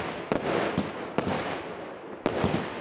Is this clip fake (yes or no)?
no